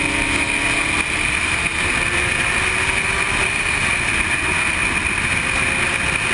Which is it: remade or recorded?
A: recorded